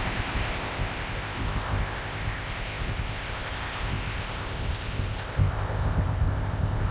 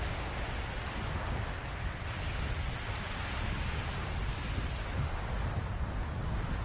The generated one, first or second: first